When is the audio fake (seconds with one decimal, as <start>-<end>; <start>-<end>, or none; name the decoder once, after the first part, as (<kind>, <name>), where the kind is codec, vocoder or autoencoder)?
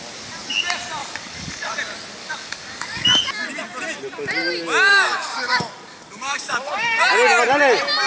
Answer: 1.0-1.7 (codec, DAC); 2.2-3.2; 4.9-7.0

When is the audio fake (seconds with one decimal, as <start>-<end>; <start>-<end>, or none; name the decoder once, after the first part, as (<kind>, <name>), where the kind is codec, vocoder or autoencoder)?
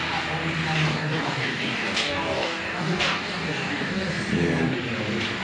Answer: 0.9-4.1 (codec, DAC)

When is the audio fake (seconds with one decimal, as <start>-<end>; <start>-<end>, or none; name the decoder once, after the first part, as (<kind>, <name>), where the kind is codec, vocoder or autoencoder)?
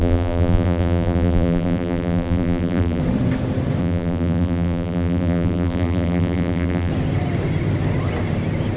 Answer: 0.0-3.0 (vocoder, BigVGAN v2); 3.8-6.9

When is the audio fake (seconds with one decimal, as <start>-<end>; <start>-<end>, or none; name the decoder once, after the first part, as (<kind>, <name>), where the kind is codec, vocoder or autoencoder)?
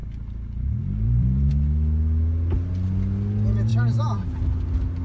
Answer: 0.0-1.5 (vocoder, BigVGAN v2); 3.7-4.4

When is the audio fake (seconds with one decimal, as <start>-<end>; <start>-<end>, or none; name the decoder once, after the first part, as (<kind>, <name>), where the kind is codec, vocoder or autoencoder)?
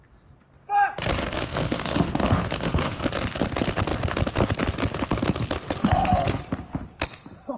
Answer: 1.2-3.0 (codec, SNAC); 5.8-6.4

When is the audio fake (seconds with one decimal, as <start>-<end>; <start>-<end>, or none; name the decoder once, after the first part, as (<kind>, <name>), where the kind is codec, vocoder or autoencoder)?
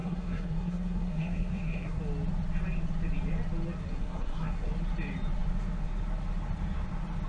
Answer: 0.0-2.0 (codec, SNAC); 3.9-4.7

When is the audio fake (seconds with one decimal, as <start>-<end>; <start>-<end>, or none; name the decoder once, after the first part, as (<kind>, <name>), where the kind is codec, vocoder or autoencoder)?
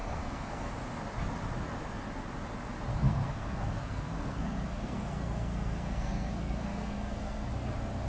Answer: 0.0-0.7 (codec, SNAC); 2.9-7.5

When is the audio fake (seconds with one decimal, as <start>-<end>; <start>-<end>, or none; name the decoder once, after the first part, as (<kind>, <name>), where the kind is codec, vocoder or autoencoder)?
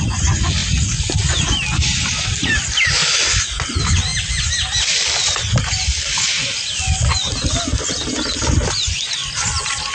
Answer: none